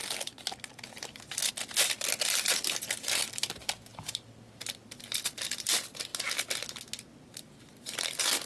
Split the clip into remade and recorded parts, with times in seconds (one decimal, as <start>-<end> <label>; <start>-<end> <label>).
0.0-8.5 recorded